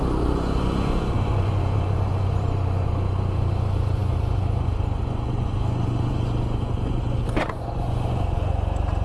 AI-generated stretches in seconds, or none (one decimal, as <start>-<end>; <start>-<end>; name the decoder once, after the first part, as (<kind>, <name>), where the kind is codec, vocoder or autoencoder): 0.0-9.0 (vocoder, Vocos)